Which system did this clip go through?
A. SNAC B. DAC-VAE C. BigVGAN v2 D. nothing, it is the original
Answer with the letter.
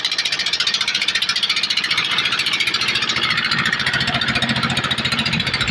C